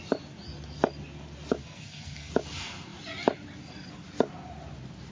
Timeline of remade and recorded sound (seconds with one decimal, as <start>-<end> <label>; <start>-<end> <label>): 0.0-1.6 recorded; 1.6-2.3 remade; 2.3-5.1 recorded